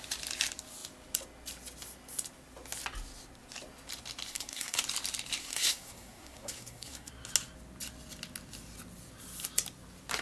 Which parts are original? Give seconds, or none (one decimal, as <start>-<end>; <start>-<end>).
0.0-4.3; 4.8-5.4; 7.1-10.2